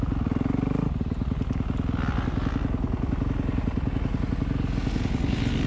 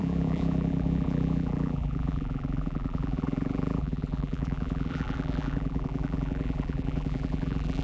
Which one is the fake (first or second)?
second